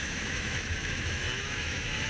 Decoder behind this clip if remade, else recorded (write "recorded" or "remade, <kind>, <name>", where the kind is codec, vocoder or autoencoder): remade, autoencoder, DAC-VAE